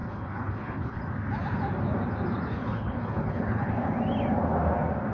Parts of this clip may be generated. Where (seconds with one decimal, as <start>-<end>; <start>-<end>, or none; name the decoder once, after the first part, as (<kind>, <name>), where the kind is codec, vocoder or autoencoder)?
0.0-1.0 (codec, HILCodec); 2.5-3.7